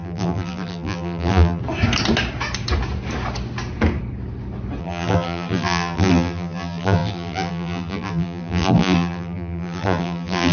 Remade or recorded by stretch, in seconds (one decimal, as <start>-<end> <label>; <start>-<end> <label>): 0.0-1.6 remade; 1.6-4.8 recorded; 4.8-10.5 remade